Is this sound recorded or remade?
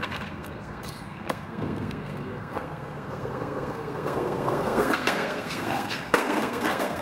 remade